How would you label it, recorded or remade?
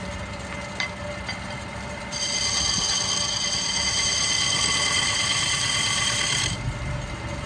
recorded